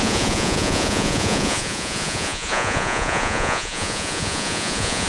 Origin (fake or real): fake